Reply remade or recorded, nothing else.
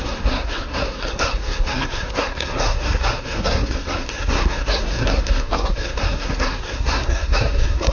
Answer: remade